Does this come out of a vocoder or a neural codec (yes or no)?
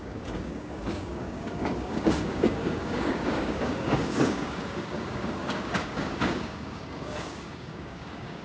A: yes